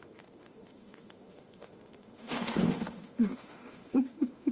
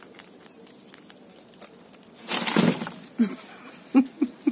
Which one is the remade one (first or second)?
first